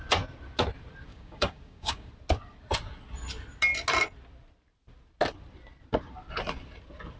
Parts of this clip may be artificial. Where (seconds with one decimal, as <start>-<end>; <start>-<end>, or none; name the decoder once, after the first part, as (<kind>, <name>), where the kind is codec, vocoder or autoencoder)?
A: 1.1-2.1 (codec, DAC)

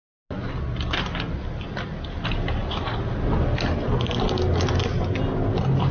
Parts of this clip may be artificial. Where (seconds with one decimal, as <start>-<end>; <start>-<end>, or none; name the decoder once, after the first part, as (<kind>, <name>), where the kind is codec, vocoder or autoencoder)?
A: none

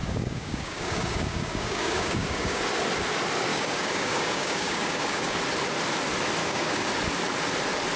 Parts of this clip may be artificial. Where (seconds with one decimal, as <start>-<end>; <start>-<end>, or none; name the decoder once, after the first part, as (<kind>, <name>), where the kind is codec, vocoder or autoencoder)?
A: 0.0-2.6 (codec, DAC); 3.5-5.4; 6.4-6.9

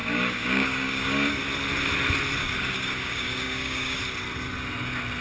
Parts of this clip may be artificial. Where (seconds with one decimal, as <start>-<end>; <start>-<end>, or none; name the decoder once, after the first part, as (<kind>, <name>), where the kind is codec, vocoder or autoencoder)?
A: 0.0-1.4 (codec, DAC); 2.4-4.0

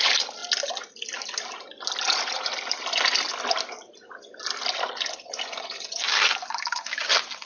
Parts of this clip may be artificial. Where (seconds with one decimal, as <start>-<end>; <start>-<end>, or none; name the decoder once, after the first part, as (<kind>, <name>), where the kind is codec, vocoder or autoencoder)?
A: none

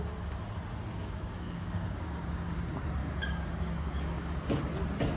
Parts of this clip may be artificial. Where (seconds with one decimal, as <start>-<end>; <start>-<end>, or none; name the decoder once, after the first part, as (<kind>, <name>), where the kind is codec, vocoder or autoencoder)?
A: 1.0-2.6 (codec, DAC); 3.0-4.6

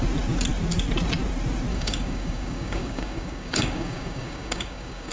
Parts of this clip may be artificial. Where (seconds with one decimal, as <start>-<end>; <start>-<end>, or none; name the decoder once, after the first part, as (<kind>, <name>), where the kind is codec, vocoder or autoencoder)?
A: 1.7-5.1 (codec, DAC)

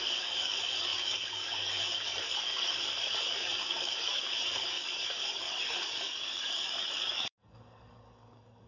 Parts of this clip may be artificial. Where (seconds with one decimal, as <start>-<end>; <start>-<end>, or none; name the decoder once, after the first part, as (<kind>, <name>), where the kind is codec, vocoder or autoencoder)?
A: 0.0-8.7 (codec, DAC)